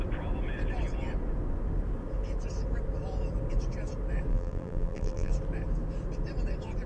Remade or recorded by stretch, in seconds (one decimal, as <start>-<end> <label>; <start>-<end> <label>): 0.0-4.3 recorded; 4.3-5.3 remade; 5.3-6.9 recorded